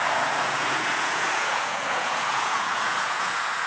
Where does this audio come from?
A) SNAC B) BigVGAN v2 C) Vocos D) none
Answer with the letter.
C